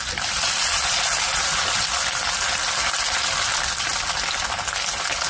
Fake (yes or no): no